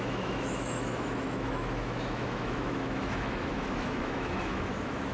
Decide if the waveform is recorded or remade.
remade